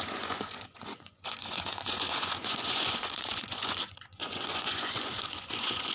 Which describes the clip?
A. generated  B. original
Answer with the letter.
A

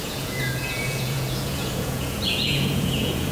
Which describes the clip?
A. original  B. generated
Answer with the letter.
B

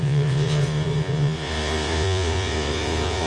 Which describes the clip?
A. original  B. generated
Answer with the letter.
B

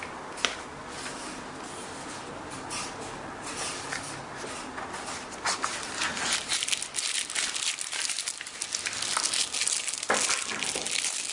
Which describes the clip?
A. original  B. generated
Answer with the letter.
A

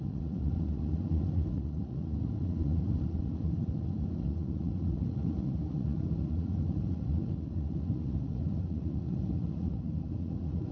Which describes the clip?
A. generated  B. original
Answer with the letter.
A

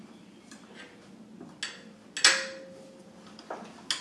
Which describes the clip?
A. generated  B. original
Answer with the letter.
B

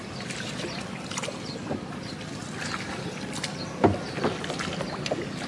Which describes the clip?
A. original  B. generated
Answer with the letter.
A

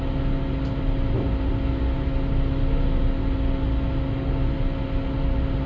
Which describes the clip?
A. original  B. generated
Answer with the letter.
A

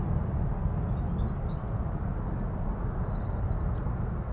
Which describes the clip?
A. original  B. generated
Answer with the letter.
A